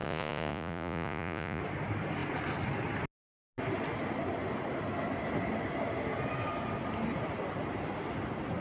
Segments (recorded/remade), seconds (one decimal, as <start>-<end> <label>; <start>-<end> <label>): 0.0-1.6 remade; 1.6-8.6 recorded